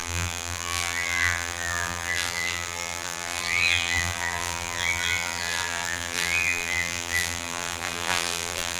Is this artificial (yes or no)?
yes